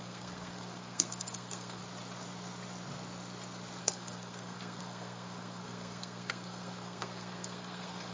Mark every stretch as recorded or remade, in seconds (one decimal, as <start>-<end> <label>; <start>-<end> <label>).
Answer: 0.0-1.8 remade; 1.8-3.8 recorded; 3.8-8.1 remade